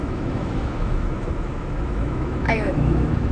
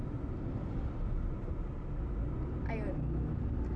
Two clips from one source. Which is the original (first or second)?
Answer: second